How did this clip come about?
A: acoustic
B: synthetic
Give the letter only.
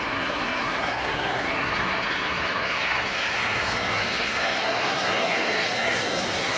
B